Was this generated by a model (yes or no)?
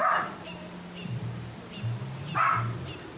no